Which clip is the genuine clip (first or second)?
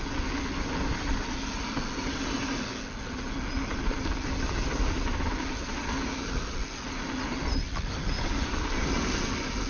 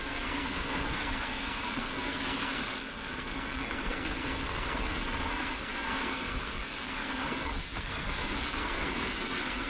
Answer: first